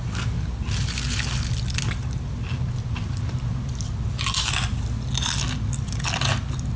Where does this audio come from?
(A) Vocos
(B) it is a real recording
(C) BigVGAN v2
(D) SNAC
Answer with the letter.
B